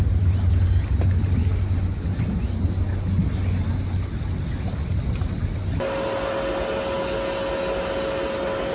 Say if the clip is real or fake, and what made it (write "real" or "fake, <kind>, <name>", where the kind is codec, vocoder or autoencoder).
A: real